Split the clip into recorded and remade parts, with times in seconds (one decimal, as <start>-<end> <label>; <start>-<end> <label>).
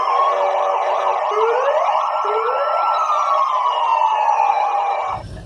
0.0-1.1 remade; 1.1-1.8 recorded; 1.8-3.9 remade; 3.9-4.5 recorded; 4.5-5.5 remade